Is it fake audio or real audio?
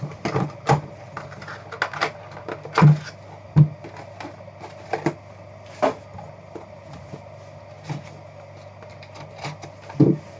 real